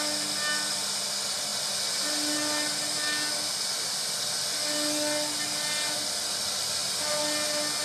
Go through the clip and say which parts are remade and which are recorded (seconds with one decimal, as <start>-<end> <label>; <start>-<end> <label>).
0.0-7.8 recorded